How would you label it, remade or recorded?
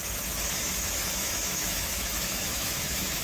remade